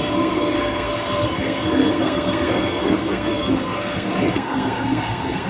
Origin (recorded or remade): remade